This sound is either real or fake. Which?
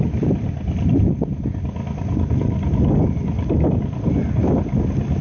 real